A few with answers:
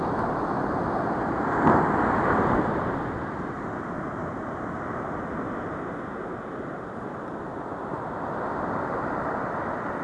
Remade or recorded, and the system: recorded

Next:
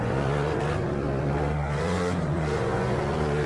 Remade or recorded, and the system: remade, vocoder, Vocos